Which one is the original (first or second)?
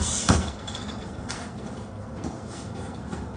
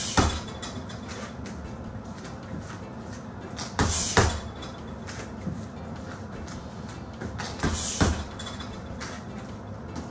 second